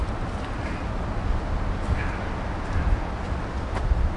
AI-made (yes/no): no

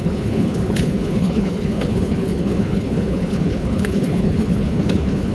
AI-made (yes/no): yes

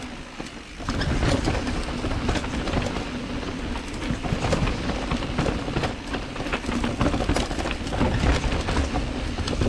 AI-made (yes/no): no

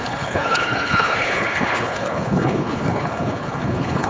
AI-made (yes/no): yes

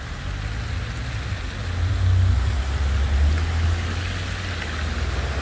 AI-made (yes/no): no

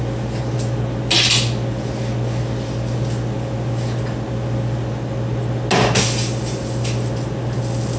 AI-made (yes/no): no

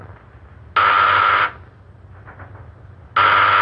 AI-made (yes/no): no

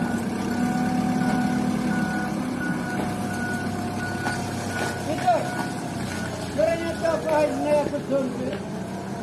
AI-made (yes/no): no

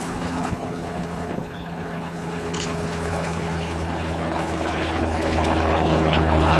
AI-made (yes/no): yes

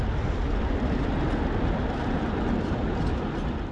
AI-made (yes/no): no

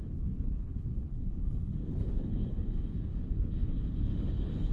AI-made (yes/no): yes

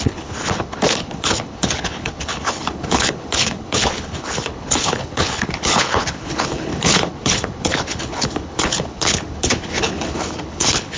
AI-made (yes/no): yes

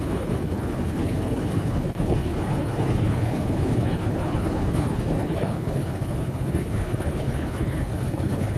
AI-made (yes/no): yes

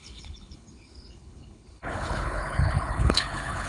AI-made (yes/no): yes